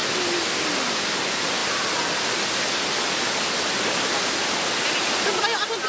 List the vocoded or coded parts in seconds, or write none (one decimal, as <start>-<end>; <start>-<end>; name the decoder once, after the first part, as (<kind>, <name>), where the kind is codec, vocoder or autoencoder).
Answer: none